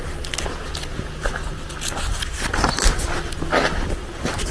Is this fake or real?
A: real